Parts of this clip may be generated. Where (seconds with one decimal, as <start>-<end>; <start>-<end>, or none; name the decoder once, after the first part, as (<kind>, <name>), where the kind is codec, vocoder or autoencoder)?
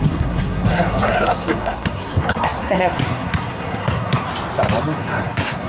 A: 0.0-4.3 (codec, SNAC); 4.8-5.7